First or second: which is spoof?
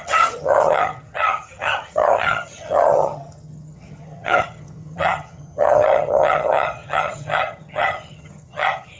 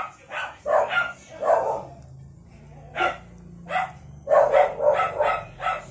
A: first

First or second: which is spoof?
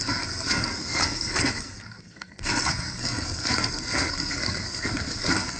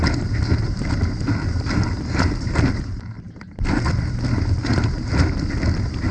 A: first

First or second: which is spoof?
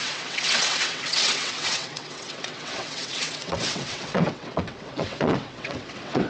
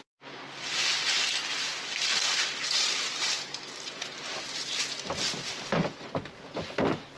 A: first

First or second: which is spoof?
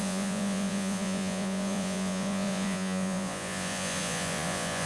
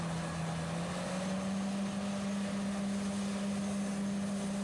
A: first